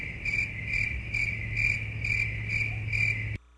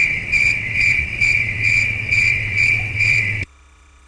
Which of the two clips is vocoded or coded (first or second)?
second